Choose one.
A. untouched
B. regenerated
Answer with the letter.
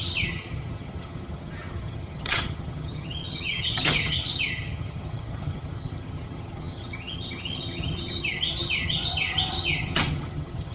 B